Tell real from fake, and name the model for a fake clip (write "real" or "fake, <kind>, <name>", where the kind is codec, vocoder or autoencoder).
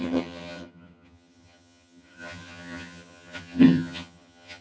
fake, vocoder, HiFi-GAN